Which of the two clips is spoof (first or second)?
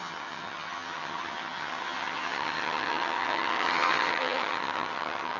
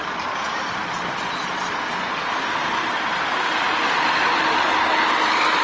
first